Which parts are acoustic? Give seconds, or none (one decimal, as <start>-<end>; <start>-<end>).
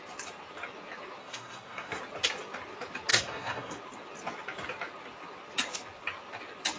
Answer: 0.0-1.2; 2.0-3.1; 3.8-6.8